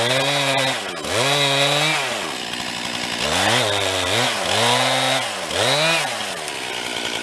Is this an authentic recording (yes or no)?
yes